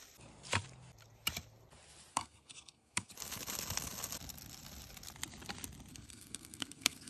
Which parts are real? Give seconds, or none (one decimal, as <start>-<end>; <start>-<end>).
0.0-2.1; 3.1-5.9